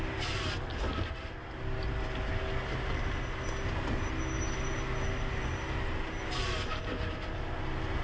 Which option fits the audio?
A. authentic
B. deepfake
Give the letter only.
A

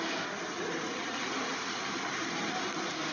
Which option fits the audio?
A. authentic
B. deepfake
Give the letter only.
A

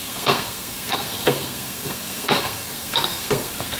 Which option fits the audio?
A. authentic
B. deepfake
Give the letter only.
B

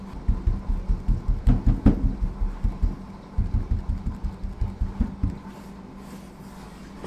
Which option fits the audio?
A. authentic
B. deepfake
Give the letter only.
A